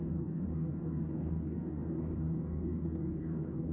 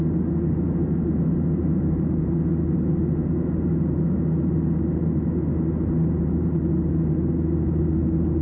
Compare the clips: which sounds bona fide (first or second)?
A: second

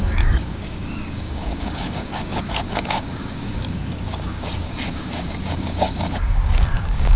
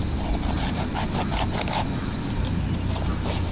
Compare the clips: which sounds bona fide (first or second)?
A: second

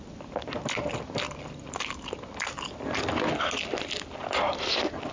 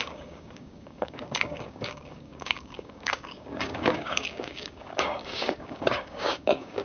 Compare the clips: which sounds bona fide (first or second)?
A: first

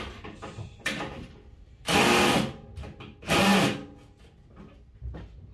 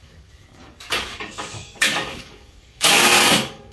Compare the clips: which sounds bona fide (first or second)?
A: first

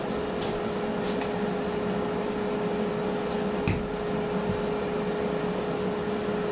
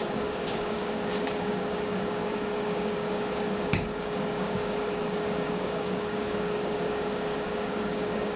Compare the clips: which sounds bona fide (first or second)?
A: first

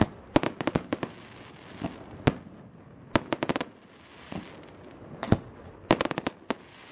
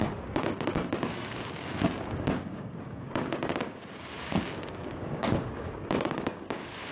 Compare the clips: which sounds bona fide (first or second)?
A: first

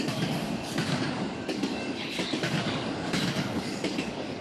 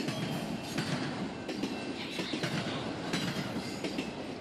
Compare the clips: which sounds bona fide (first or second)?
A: second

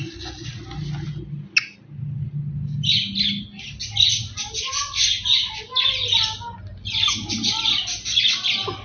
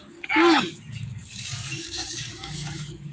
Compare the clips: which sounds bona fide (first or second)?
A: first